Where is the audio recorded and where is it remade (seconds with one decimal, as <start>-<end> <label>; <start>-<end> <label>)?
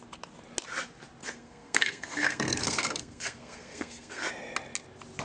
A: 0.0-1.2 recorded; 1.2-4.3 remade; 4.3-5.2 recorded